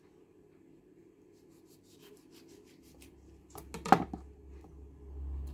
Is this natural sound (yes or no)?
yes